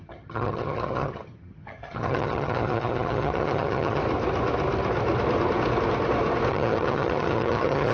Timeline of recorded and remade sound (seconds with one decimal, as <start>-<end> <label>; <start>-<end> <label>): 0.0-4.0 remade; 4.0-6.5 recorded; 6.5-7.9 remade